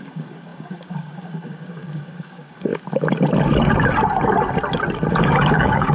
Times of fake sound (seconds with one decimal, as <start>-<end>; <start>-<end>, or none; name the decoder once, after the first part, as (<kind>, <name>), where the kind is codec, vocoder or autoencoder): 0.0-2.7 (codec, DAC); 5.1-5.9

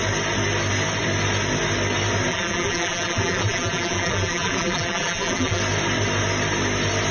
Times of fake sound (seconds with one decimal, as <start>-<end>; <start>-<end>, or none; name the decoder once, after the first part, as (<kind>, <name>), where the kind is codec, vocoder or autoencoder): 2.3-5.6 (vocoder, BigVGAN v2)

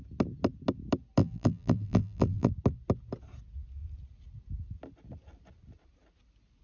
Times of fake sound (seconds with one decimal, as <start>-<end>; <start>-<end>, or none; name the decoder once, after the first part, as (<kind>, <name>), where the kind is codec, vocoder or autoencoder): 1.2-2.5 (vocoder, BigVGAN v2)

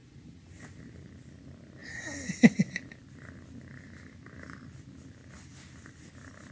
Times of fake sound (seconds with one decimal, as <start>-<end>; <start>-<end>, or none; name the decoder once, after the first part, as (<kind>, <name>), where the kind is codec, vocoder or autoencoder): 0.0-0.8 (vocoder, Vocos)

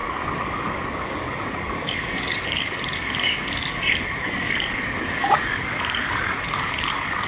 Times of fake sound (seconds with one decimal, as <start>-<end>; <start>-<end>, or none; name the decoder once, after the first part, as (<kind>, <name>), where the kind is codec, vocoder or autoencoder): 0.0-7.3 (codec, DAC)

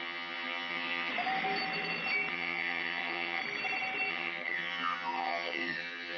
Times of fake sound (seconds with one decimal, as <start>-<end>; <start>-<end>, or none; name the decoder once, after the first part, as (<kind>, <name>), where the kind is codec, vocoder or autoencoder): 0.0-1.1 (vocoder, HiFi-GAN); 2.3-3.4; 4.1-6.2

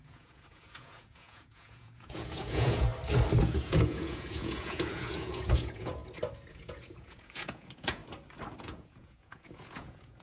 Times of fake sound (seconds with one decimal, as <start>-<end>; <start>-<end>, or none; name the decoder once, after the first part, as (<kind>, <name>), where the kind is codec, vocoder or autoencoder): 0.0-2.9 (vocoder, Vocos); 3.4-6.0; 6.5-8.0; 8.6-10.2